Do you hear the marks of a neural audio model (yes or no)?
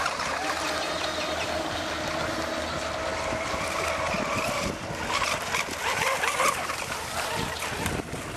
no